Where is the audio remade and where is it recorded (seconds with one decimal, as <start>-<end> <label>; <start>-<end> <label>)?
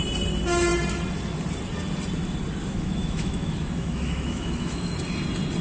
0.0-2.6 recorded; 2.6-4.9 remade; 4.9-5.6 recorded